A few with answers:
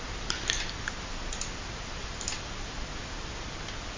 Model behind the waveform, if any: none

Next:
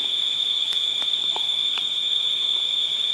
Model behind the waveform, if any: autoencoder, DAC-VAE